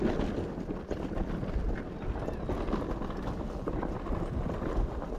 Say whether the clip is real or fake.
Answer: real